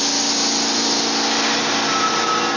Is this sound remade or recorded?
recorded